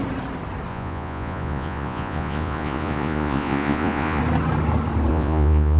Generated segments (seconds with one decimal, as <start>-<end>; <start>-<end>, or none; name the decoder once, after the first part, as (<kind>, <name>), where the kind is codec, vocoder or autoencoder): 0.7-4.2 (vocoder, Vocos); 5.1-5.8

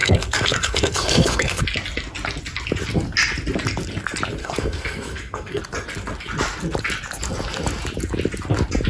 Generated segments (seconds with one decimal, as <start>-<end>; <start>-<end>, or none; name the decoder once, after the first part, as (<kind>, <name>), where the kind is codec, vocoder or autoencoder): 0.0-1.6 (codec, SNAC); 4.4-5.6

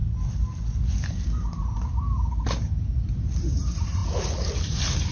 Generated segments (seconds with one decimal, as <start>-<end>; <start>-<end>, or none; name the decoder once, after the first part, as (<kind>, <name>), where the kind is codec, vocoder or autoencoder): 3.1-4.0 (vocoder, BigVGAN v2); 4.6-5.1

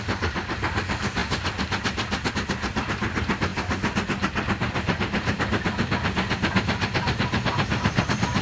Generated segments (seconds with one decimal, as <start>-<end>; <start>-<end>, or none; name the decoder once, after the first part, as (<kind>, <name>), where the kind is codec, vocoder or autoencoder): none

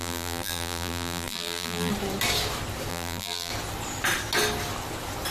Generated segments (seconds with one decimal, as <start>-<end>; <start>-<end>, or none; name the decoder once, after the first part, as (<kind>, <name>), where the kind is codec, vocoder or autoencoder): 0.0-1.9 (vocoder, BigVGAN v2); 2.9-3.5